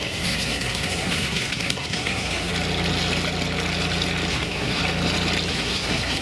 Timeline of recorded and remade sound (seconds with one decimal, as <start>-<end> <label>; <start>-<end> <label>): 0.0-2.5 remade; 2.5-4.3 recorded; 4.3-4.8 remade; 4.8-5.5 recorded; 5.5-6.2 remade